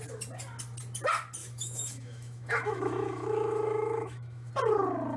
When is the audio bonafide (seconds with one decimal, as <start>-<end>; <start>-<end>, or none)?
0.0-1.4; 4.5-5.2